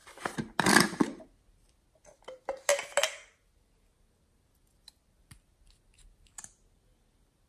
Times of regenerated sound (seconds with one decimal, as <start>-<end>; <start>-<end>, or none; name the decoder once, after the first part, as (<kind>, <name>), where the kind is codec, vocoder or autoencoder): none